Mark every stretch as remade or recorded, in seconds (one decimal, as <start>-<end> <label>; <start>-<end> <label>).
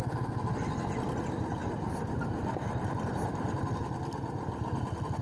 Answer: 0.0-5.2 recorded